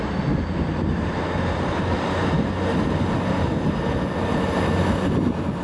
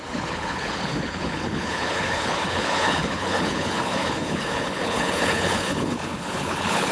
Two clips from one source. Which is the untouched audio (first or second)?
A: first